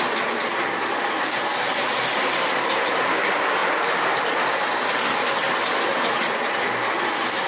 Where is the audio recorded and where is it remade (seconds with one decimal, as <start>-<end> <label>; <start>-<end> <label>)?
0.0-7.5 recorded